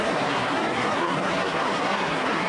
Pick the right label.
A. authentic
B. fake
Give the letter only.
B